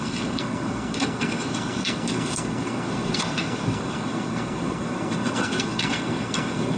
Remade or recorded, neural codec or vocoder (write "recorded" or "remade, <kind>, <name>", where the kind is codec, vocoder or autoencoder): remade, codec, SNAC